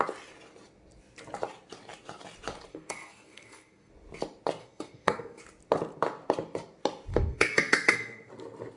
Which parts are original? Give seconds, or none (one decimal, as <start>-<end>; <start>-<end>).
0.0-2.7; 3.9-4.6; 5.4-7.1; 8.3-8.8